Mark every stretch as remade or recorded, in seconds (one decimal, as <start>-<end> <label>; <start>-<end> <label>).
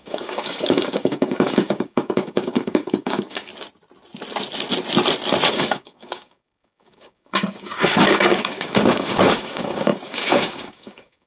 0.0-3.5 remade; 3.5-5.5 recorded; 5.5-11.3 remade